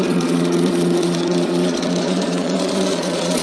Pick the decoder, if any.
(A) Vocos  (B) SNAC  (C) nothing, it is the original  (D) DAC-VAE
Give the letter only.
A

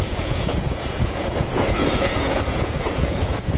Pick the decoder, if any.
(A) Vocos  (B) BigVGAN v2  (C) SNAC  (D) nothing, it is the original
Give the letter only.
A